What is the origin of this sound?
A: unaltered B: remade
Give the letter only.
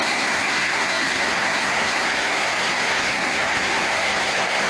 B